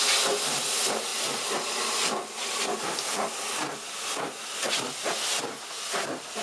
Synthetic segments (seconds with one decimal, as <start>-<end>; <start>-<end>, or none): none

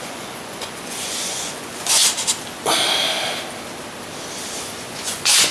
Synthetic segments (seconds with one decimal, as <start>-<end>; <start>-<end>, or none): 0.0-2.0; 4.6-5.5

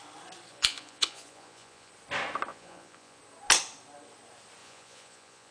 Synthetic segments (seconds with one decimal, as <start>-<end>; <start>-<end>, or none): 0.5-1.9; 2.5-3.2; 4.6-5.5